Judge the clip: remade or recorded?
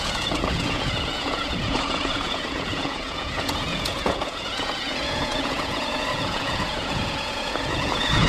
remade